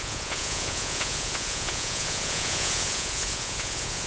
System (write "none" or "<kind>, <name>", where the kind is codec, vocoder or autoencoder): vocoder, Vocos